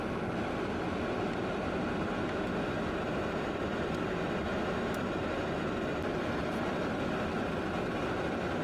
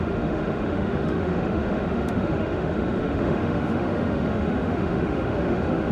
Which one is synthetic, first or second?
second